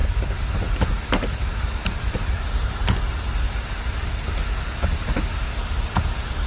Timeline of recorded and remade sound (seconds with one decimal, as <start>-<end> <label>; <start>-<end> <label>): 0.0-3.9 remade; 3.9-6.5 recorded